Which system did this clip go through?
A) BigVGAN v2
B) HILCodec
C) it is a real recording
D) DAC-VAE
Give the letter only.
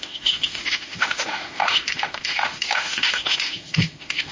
D